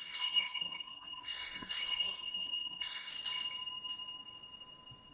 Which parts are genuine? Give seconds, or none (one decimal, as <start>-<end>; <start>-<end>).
3.1-5.1